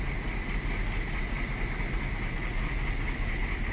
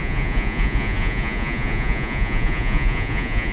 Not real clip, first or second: second